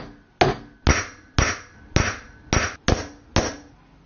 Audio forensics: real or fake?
real